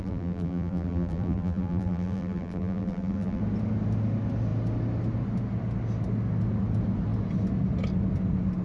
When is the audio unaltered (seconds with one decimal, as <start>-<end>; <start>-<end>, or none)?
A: 3.4-8.6